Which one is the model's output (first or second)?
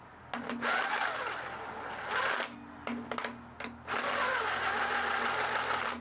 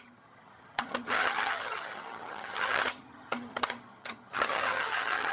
second